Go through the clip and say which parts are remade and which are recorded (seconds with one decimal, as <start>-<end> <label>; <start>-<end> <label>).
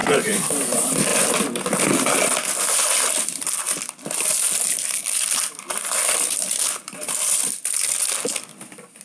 0.0-9.0 recorded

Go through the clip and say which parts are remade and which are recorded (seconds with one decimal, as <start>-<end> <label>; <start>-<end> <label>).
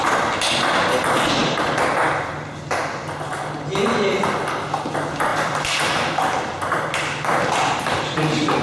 0.0-5.3 recorded; 5.3-8.0 remade; 8.0-8.6 recorded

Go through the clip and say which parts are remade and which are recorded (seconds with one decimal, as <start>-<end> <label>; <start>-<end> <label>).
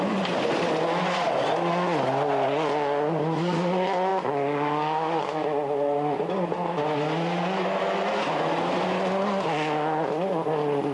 0.0-10.9 recorded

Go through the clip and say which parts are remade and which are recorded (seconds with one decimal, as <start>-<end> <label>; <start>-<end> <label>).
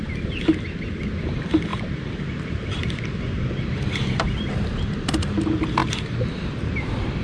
0.0-7.2 remade